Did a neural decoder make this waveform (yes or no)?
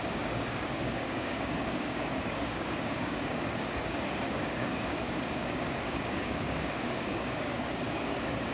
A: yes